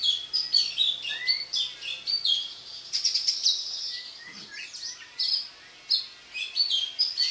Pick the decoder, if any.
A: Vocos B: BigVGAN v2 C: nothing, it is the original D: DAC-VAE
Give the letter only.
C